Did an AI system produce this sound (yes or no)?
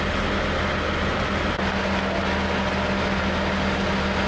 no